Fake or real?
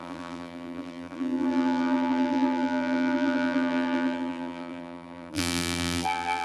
fake